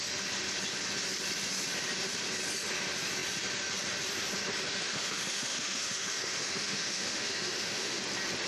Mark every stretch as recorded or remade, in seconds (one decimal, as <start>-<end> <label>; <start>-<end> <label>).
0.0-4.8 recorded; 4.8-8.0 remade; 8.0-8.5 recorded